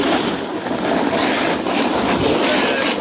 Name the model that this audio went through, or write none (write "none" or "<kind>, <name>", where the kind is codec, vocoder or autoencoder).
none